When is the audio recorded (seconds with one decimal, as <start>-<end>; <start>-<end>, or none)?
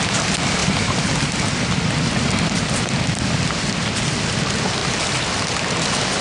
0.0-0.6; 4.1-4.8; 5.8-6.2